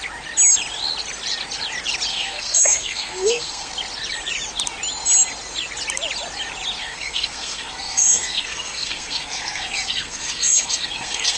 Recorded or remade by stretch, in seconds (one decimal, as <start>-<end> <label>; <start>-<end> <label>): 0.0-2.1 recorded; 2.1-3.7 remade; 3.7-6.8 recorded; 6.8-11.4 remade